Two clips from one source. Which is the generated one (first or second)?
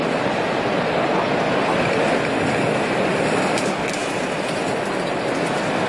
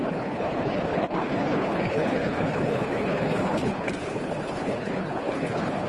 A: second